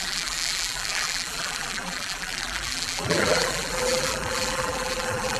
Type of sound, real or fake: fake